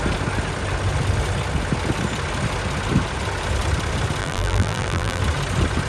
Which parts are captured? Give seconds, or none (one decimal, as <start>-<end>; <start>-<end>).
0.0-4.2; 5.2-5.9